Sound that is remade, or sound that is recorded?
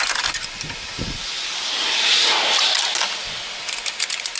recorded